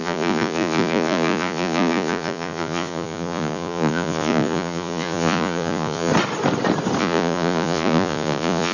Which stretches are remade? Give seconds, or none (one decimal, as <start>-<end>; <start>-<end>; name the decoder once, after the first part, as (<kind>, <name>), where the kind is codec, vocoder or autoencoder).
0.0-6.1 (vocoder, Vocos); 7.0-8.7